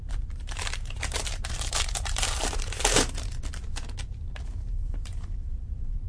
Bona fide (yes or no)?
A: no